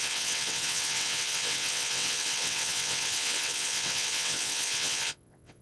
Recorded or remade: remade